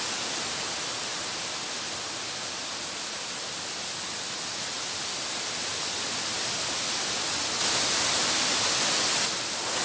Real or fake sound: real